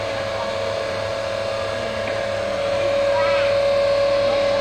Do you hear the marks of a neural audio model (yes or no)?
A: no